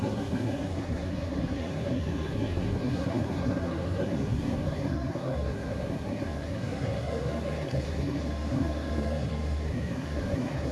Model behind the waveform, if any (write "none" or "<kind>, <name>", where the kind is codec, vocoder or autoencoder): codec, SNAC